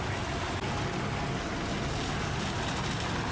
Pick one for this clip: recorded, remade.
recorded